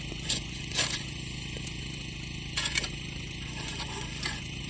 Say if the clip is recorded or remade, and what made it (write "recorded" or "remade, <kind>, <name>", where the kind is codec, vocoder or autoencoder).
remade, vocoder, Vocos